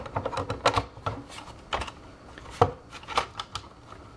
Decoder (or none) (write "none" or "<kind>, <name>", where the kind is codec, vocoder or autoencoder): none